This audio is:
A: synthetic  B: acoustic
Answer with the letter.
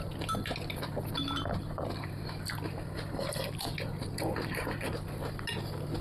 B